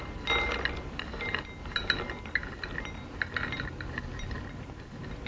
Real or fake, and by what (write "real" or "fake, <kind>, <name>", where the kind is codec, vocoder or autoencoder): real